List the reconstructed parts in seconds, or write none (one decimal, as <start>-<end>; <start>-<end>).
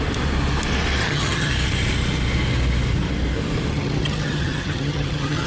1.0-1.5; 3.7-5.5